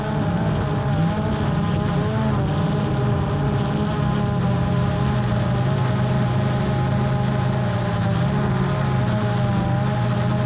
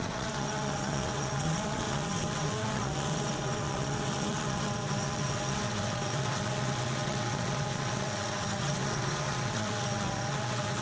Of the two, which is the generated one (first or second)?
second